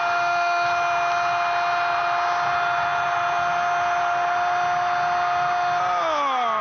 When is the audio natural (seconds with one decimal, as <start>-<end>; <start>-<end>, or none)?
0.0-6.6